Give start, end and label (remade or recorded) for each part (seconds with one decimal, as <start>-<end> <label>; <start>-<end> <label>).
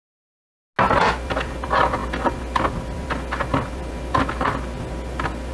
0.0-5.5 recorded